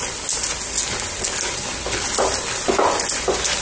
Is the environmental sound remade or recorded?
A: recorded